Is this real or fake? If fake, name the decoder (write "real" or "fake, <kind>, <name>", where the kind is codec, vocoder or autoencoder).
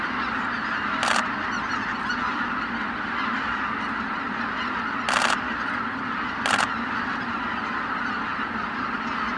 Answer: real